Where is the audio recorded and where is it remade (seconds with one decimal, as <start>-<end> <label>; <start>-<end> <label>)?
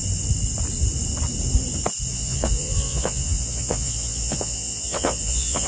0.0-2.1 recorded; 2.1-5.7 remade